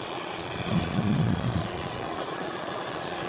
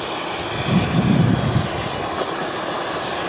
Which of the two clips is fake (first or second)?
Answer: first